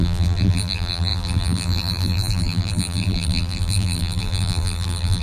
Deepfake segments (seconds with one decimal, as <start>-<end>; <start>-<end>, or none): 0.0-5.2